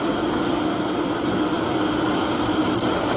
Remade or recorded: recorded